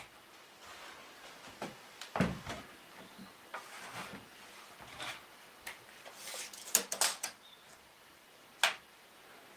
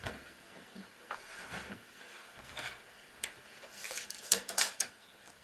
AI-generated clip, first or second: second